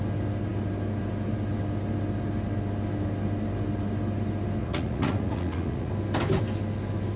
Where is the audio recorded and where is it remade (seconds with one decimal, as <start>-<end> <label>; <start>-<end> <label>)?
0.0-4.6 recorded; 4.6-5.9 remade; 5.9-7.2 recorded